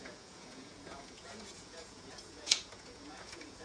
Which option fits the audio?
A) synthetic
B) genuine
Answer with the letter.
A